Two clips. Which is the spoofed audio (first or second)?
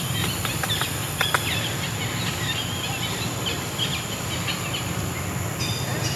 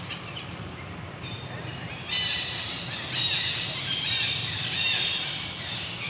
second